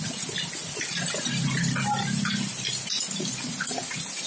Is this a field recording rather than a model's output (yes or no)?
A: yes